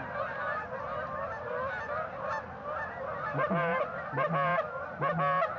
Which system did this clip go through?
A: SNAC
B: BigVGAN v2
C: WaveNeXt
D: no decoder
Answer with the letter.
D